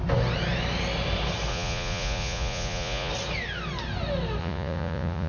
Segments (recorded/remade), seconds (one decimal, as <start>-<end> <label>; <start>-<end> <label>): 0.0-1.5 recorded; 1.5-3.1 remade; 3.1-4.4 recorded; 4.4-5.3 remade